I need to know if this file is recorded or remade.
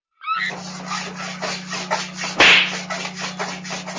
recorded